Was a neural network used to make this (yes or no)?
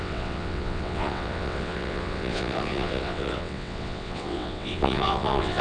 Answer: yes